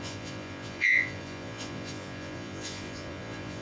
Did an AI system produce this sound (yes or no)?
yes